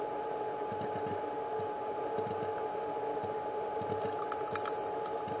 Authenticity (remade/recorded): recorded